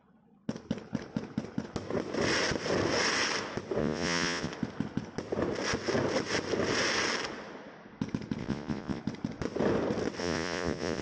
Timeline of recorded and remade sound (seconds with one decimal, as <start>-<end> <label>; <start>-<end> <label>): 0.0-3.8 recorded; 3.8-4.5 remade; 4.5-8.4 recorded; 8.4-9.0 remade; 9.0-10.2 recorded; 10.2-11.0 remade